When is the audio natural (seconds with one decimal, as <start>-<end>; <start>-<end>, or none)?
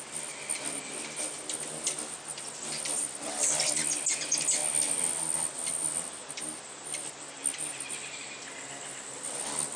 0.0-9.8